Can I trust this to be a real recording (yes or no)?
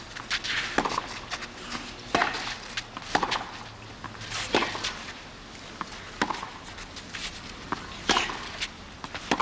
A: yes